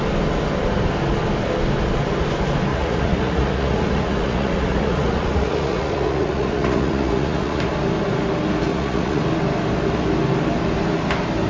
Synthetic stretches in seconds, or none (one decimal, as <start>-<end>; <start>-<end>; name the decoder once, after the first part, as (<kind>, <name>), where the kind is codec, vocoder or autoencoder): 2.7-7.6 (vocoder, Vocos); 8.7-9.2